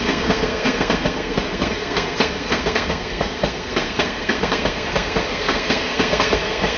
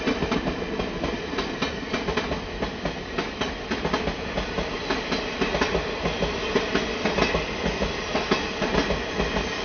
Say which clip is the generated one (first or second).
first